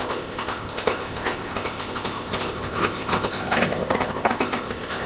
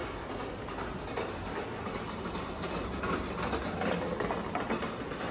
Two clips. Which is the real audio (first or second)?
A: second